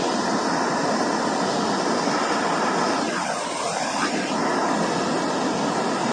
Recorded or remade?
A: recorded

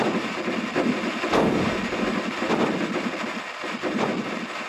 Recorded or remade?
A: recorded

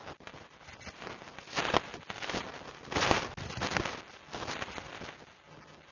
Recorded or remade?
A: recorded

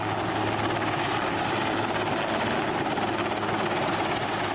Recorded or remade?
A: recorded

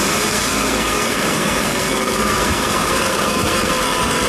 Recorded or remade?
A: remade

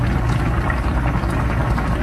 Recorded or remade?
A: recorded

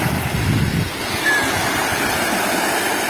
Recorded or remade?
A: recorded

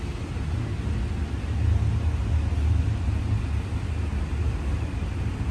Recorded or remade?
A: recorded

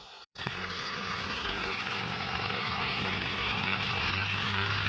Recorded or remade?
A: remade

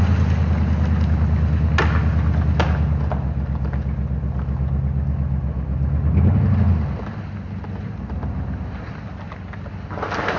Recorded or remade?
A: recorded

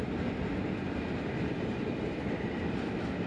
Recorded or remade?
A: recorded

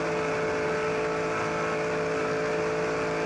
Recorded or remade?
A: recorded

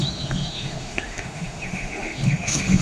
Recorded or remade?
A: remade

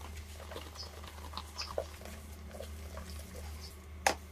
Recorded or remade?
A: recorded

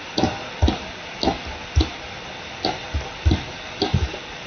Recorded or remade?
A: recorded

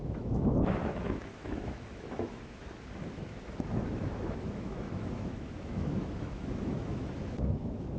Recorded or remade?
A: remade